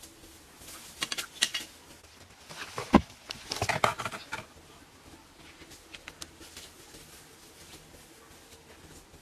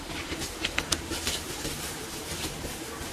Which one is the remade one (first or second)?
second